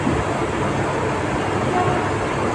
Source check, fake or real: real